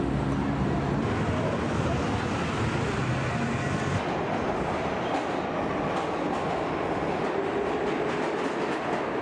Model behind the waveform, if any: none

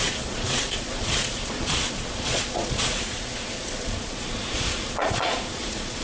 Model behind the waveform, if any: vocoder, Vocos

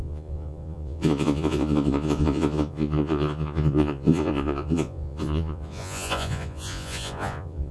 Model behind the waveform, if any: vocoder, Vocos